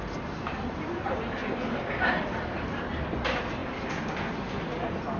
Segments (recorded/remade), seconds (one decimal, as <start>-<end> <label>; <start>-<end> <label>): 0.0-3.6 recorded; 3.6-4.3 remade; 4.3-5.2 recorded

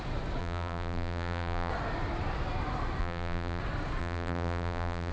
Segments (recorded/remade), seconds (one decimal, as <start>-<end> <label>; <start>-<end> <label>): 0.0-0.4 recorded; 0.4-1.7 remade; 1.7-3.0 recorded; 3.0-3.6 remade; 3.6-4.0 recorded; 4.0-5.1 remade

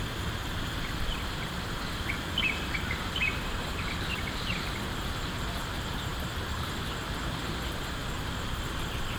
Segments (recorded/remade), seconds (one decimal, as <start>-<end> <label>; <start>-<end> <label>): 0.0-0.4 recorded; 0.4-4.8 remade; 4.8-8.0 recorded; 8.0-9.2 remade

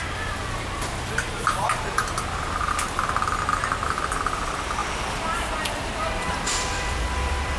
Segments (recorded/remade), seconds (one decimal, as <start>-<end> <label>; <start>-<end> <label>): 0.0-0.4 remade; 0.4-3.8 recorded; 3.8-7.6 remade

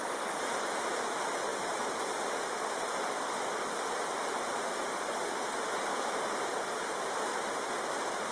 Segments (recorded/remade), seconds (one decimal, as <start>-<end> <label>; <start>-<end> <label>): 0.0-8.3 recorded